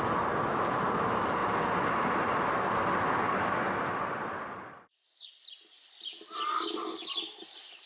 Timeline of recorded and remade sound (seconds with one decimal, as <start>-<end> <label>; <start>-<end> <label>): 0.0-7.9 recorded